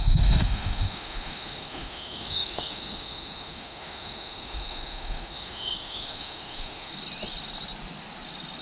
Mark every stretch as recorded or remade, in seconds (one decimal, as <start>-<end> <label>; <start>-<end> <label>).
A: 0.0-6.9 remade; 6.9-8.6 recorded